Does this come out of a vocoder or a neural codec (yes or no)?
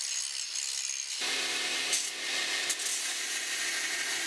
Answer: no